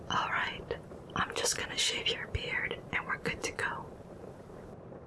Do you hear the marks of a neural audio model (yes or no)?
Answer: yes